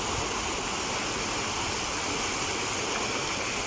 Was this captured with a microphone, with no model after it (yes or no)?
yes